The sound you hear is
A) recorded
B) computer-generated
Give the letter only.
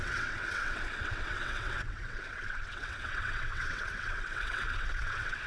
B